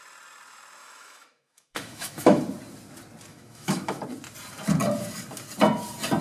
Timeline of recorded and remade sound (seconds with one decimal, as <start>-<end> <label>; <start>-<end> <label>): 0.0-0.8 recorded; 0.8-2.4 remade; 2.4-3.3 recorded; 3.3-4.0 remade; 4.0-6.2 recorded